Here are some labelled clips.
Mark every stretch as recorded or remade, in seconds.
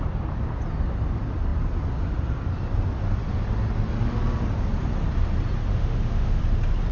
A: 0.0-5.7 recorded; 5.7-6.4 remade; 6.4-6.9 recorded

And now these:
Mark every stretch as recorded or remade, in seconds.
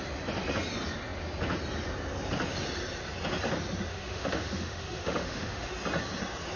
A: 0.0-3.9 recorded; 3.9-5.7 remade; 5.7-6.6 recorded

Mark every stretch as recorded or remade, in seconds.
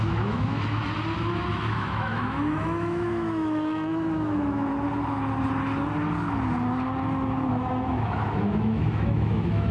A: 0.0-0.8 remade; 0.8-1.5 recorded; 1.5-4.7 remade; 4.7-7.5 recorded; 7.5-9.7 remade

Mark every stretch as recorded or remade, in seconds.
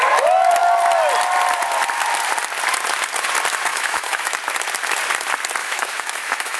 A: 0.0-3.7 recorded; 3.7-4.3 remade; 4.3-5.6 recorded; 5.6-6.6 remade